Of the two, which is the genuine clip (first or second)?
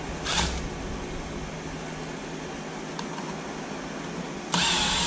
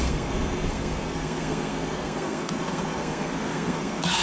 first